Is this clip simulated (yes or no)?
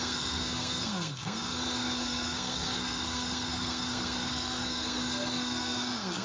yes